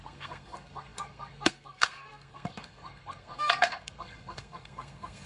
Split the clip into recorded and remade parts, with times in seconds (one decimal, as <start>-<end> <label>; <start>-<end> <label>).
0.0-5.3 remade